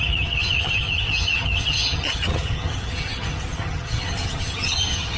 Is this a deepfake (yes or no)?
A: yes